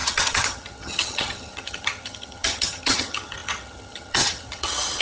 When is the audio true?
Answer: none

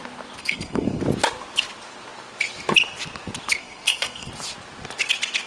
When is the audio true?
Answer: 0.0-0.4; 1.0-3.6; 4.3-5.5

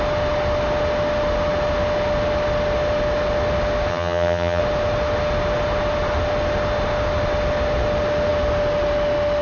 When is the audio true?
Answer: 0.0-3.9; 4.6-9.4

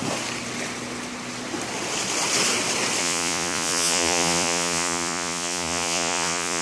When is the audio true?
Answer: 0.0-3.0

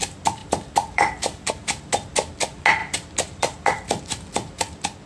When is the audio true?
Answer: 0.0-0.4; 1.5-2.8; 4.0-5.1